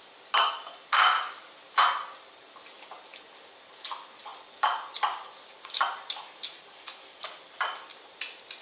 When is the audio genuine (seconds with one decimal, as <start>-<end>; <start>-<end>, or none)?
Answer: 0.0-8.6